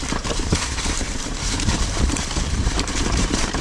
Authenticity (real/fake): fake